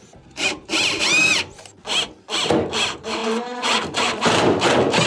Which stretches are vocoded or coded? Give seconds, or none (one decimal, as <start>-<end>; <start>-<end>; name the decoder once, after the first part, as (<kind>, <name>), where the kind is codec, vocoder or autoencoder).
0.0-1.8 (vocoder, BigVGAN v2); 2.7-5.1